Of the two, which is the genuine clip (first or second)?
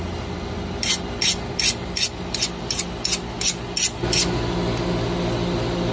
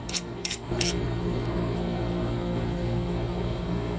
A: first